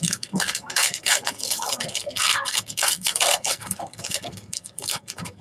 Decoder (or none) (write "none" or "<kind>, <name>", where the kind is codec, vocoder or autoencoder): codec, SNAC